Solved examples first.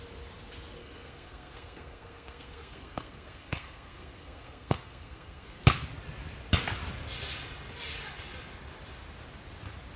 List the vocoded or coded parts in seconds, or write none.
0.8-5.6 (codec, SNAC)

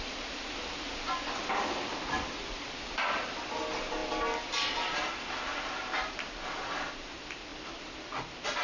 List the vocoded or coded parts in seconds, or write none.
none

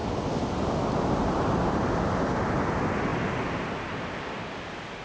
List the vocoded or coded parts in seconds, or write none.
none